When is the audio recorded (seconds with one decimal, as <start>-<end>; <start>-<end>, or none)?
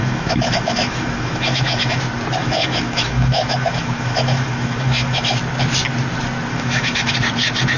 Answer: 2.0-2.4; 5.4-6.5; 7.1-7.8